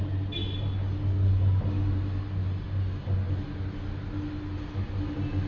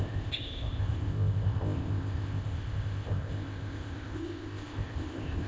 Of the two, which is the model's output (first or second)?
second